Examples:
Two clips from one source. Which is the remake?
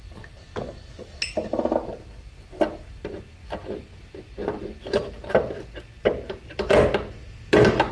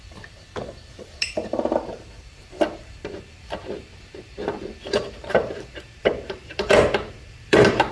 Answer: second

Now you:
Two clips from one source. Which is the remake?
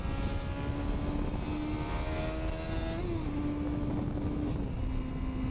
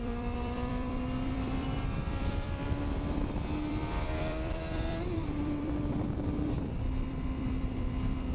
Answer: second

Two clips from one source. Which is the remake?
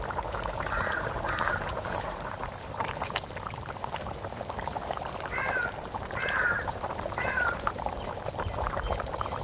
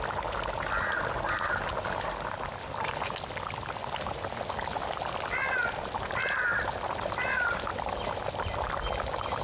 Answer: first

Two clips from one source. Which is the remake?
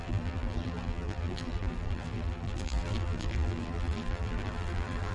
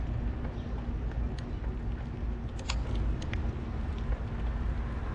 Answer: first